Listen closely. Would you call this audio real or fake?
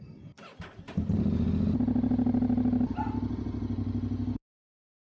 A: real